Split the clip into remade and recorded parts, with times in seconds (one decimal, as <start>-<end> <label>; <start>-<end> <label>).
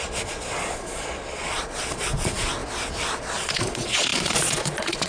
0.0-2.6 remade; 2.6-3.2 recorded; 3.2-5.1 remade